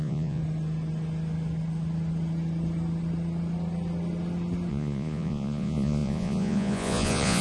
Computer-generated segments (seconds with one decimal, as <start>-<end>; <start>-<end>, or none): 0.0-0.4; 4.7-7.4